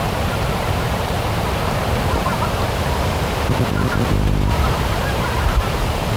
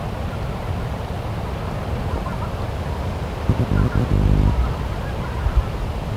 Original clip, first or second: second